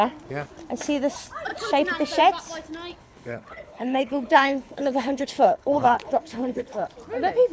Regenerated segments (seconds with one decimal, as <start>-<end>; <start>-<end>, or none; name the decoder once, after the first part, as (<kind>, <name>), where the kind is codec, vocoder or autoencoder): 3.0-6.9 (codec, HILCodec)